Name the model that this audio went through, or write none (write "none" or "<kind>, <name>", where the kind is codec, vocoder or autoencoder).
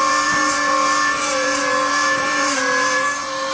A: vocoder, BigVGAN v2